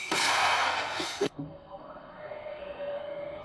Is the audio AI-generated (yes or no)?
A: yes